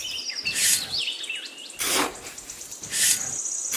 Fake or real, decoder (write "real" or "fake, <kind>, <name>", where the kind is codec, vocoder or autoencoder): real